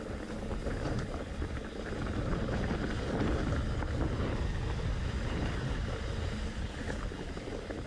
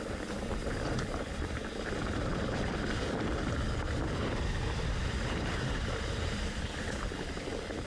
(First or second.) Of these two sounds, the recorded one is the first